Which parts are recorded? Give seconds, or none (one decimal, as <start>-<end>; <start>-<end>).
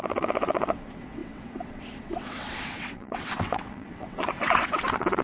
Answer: none